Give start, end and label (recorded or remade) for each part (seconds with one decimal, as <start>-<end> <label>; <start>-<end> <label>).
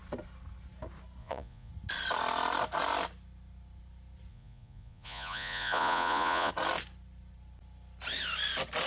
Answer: 0.0-1.2 recorded; 1.2-1.7 remade; 1.7-4.3 recorded; 4.3-6.5 remade; 6.5-8.9 recorded